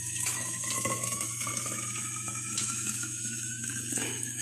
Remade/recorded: remade